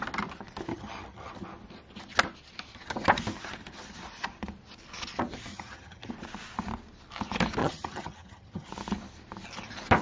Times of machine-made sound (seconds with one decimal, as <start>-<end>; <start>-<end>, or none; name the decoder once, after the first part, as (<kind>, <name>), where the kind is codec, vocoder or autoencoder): 0.7-1.3 (vocoder, HiFi-GAN); 5.5-6.1; 7.6-8.7